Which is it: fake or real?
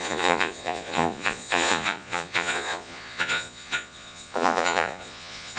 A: fake